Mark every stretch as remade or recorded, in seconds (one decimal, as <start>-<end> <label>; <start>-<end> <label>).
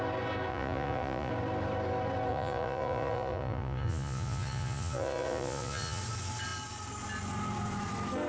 0.0-0.5 recorded; 0.5-1.3 remade; 1.3-2.3 recorded; 2.3-6.0 remade; 6.0-8.3 recorded